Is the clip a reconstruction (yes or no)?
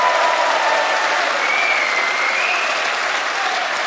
no